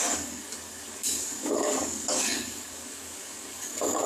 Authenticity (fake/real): fake